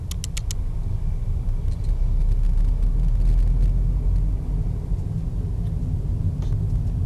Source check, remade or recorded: recorded